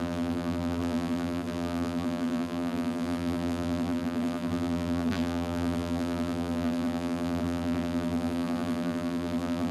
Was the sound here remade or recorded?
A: remade